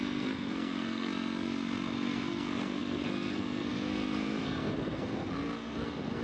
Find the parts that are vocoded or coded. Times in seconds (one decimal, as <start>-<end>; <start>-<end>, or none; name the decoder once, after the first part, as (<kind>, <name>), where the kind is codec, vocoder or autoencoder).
0.0-6.2 (codec, SNAC)